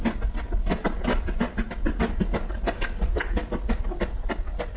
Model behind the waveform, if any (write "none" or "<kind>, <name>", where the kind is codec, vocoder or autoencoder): none